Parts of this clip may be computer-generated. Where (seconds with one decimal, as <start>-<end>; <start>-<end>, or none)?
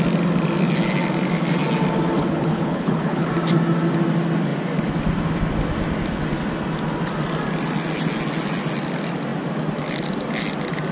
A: 2.2-3.3